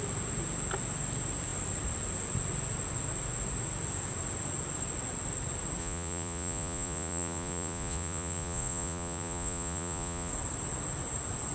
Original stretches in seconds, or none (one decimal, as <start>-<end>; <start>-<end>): 0.0-5.8; 10.3-11.5